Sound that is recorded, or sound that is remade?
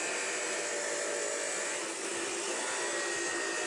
recorded